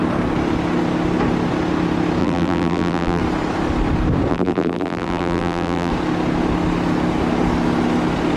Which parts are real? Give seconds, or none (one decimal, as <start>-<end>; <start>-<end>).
0.0-2.2; 3.2-4.3; 5.9-8.4

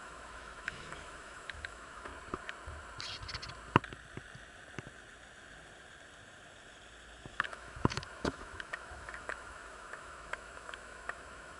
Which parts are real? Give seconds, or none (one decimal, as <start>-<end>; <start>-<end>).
2.1-7.3

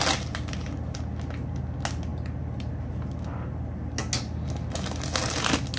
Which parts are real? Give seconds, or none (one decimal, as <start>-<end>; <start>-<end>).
0.0-5.8